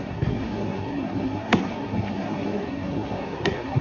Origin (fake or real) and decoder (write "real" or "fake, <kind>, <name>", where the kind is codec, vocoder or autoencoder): fake, codec, SNAC